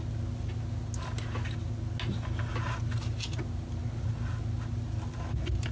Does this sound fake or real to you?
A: real